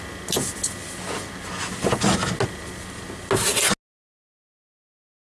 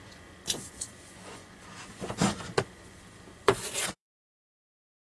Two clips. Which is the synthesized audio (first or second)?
second